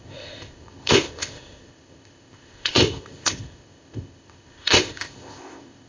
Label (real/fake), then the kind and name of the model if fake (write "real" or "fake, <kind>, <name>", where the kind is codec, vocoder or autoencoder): fake, codec, ZipCodec